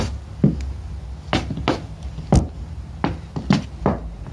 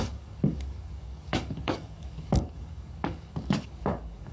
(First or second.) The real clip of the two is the first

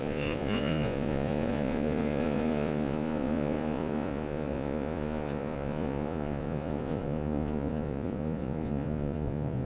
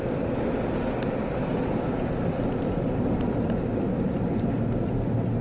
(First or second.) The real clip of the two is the second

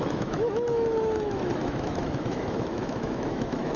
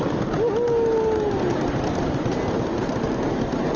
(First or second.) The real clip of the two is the second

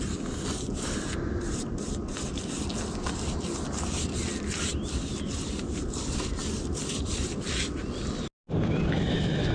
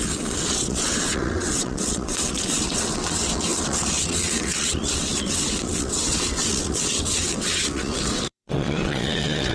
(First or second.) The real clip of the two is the first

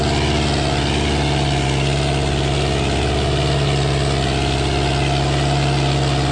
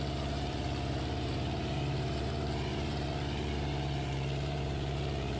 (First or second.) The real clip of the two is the first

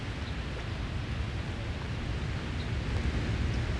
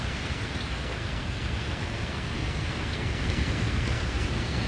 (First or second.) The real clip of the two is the first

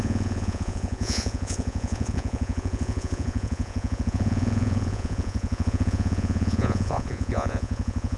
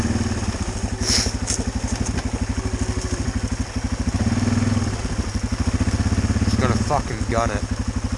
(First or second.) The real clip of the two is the second